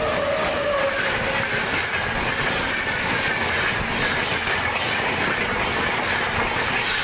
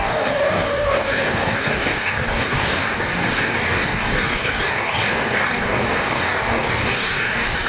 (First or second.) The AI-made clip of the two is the second